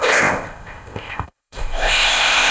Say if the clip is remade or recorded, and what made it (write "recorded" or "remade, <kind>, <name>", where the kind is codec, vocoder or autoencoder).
remade, codec, ZipCodec